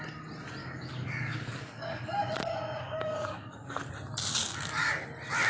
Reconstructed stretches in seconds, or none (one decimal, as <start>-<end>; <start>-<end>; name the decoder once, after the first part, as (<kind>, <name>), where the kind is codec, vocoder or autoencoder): 0.6-3.9 (codec, DAC); 4.4-4.9